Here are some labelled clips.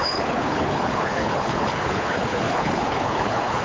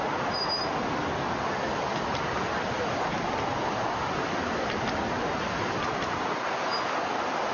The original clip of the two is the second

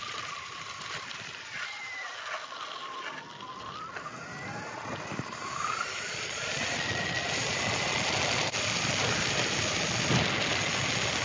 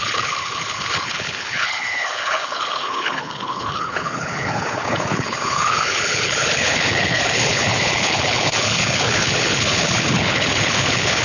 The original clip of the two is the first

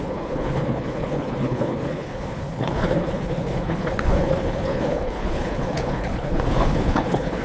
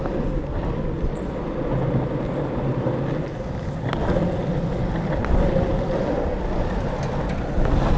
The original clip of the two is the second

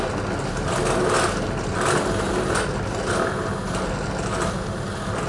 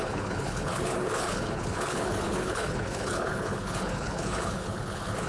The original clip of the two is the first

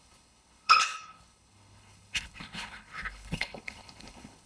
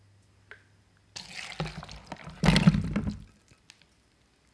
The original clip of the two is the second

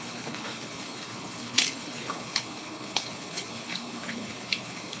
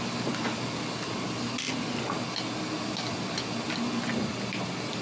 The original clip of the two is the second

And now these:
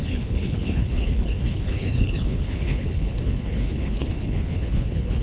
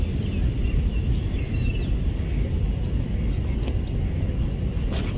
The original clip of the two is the second